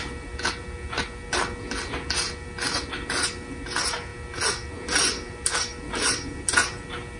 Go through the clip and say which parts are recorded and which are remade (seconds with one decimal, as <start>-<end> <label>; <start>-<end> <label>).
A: 0.0-7.2 recorded